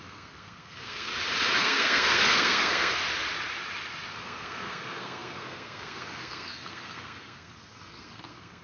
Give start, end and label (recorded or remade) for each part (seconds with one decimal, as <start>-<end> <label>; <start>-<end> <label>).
0.0-1.1 remade; 1.1-1.6 recorded; 1.6-3.0 remade; 3.0-4.1 recorded; 4.1-8.6 remade